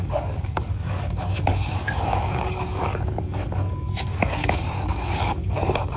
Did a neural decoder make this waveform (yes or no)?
yes